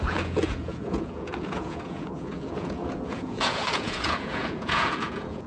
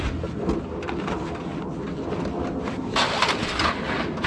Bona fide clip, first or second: second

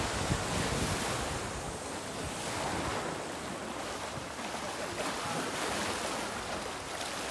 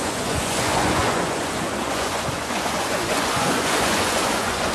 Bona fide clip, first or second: first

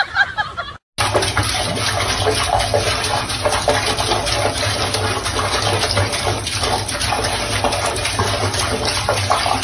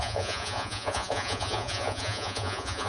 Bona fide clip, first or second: first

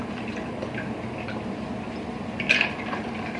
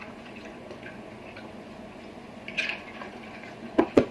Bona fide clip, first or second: first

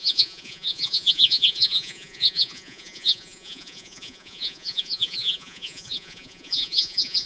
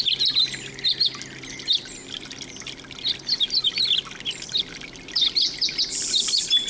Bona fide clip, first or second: second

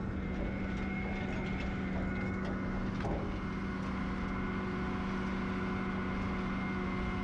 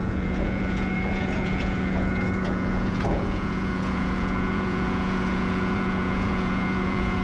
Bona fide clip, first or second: first